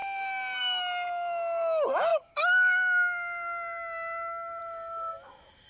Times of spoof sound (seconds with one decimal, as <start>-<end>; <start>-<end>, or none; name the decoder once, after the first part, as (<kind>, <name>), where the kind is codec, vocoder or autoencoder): none